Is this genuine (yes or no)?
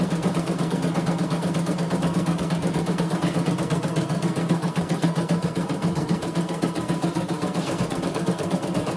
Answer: no